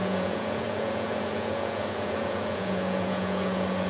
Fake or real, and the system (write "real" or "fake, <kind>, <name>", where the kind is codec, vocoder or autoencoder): fake, vocoder, Vocos